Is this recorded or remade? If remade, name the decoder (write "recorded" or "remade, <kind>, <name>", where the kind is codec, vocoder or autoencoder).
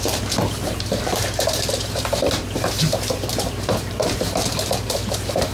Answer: remade, vocoder, BigVGAN v2